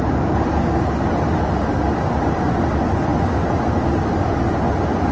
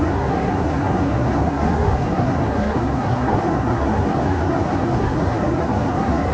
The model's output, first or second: second